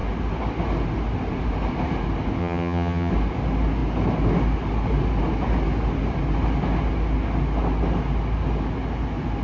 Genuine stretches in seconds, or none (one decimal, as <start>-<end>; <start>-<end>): 0.0-2.4; 3.1-9.4